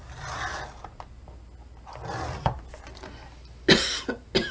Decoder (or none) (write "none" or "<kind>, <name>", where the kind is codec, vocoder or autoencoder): none